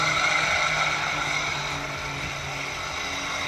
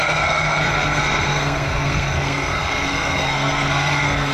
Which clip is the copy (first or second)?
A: second